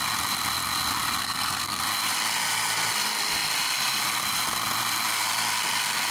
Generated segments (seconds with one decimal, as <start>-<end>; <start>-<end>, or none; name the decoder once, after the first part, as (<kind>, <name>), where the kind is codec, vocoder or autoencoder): 1.2-1.8 (codec, SNAC)